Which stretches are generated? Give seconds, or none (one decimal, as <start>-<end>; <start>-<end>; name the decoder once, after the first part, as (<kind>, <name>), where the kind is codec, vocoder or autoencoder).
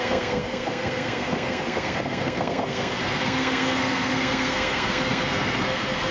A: 0.0-6.1 (codec, SNAC)